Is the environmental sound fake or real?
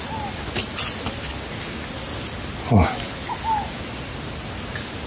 real